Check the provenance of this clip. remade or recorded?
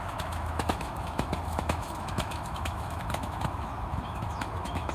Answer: remade